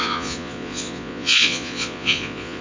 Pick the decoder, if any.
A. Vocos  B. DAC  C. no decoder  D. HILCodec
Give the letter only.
A